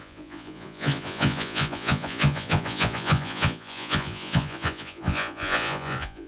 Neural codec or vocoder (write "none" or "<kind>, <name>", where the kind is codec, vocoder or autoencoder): vocoder, Vocos